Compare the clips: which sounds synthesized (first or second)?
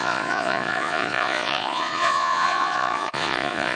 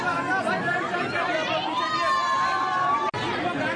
first